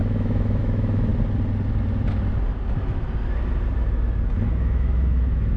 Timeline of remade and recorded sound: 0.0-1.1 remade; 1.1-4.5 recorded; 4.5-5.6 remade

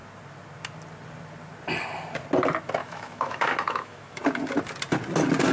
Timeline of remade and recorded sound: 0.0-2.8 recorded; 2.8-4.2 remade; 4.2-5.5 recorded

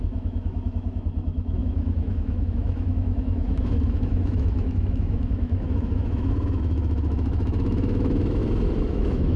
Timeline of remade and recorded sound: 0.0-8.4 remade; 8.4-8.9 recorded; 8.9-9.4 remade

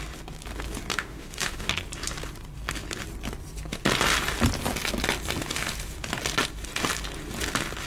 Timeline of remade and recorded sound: 0.0-0.9 recorded; 0.9-1.7 remade; 1.7-7.9 recorded

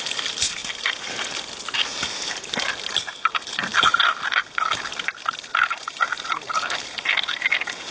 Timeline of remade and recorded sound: 0.0-7.9 recorded